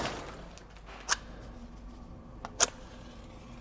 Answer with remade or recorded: recorded